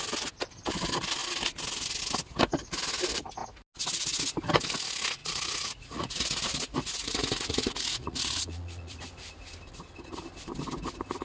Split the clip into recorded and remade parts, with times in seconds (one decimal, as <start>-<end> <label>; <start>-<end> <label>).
0.0-5.2 recorded; 5.2-9.0 remade; 9.0-11.2 recorded